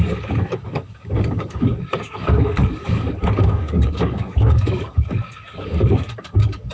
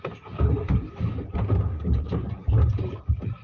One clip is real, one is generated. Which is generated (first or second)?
first